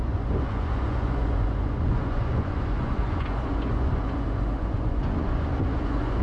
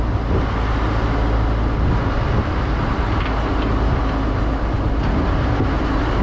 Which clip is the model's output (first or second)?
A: first